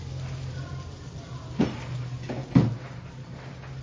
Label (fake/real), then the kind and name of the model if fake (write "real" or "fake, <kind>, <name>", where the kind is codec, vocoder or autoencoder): real